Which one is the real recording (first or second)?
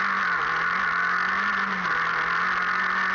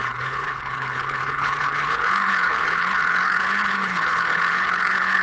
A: first